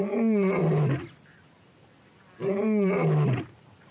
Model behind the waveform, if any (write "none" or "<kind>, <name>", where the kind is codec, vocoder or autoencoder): none